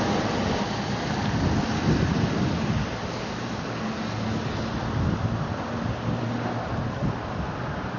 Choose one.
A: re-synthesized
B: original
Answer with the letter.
B